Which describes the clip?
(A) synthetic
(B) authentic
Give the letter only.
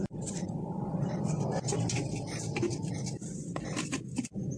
A